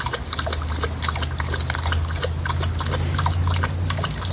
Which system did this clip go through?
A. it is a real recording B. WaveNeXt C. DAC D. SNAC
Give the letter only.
A